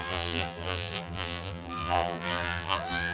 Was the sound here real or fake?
fake